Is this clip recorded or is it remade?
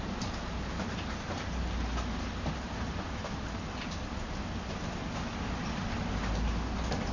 recorded